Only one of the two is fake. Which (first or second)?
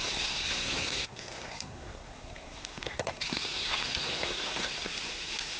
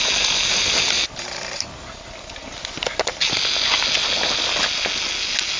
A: first